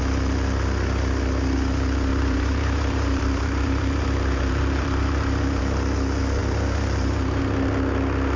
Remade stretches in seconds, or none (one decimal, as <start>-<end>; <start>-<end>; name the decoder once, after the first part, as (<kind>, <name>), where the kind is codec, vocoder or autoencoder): 2.1-5.6 (vocoder, BigVGAN v2); 6.4-7.4